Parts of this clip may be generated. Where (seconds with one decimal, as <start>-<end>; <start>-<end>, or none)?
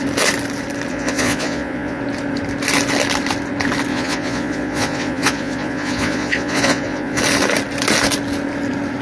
0.9-2.0; 3.9-7.2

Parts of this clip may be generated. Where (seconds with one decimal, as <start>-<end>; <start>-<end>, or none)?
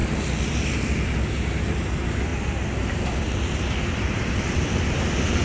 0.0-1.2; 2.3-5.0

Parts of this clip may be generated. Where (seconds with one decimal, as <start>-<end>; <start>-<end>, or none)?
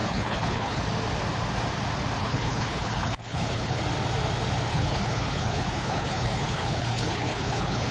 0.0-0.8; 2.2-3.8; 4.7-7.9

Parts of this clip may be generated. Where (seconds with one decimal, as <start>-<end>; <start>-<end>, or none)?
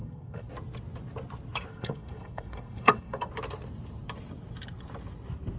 0.0-0.5; 1.7-3.3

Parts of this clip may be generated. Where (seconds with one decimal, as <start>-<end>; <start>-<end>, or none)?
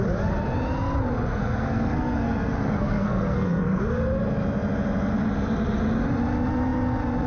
1.4-3.8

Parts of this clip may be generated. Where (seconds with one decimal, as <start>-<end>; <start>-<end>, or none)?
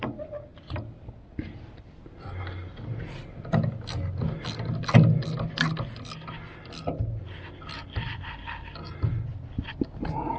none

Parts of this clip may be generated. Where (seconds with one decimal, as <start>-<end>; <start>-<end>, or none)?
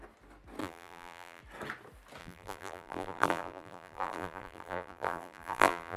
0.6-1.4; 2.2-6.0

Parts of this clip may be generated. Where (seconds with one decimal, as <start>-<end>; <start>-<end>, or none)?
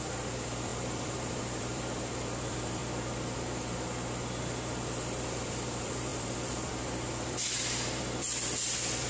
0.0-2.8; 5.2-9.1